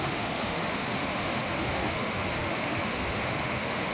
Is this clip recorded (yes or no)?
no